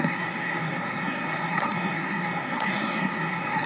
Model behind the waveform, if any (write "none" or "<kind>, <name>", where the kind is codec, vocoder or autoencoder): codec, SNAC